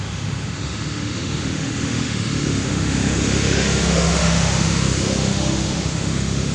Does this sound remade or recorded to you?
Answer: remade